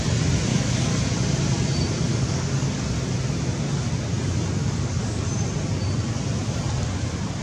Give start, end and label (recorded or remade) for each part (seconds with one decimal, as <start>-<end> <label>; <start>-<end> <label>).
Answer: 0.0-0.5 recorded; 0.5-1.0 remade; 1.0-2.1 recorded; 2.1-2.8 remade; 2.8-4.6 recorded; 4.6-5.2 remade; 5.2-7.4 recorded